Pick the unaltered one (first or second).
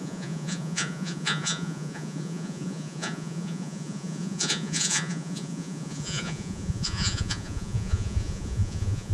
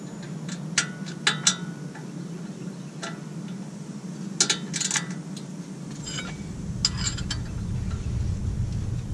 second